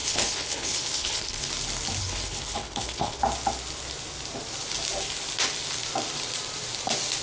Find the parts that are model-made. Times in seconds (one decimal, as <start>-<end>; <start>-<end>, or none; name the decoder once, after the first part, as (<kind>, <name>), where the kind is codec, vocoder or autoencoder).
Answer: 0.0-1.5 (codec, HILCodec); 2.0-3.2